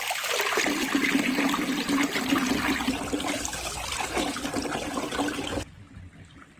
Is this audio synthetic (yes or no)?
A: no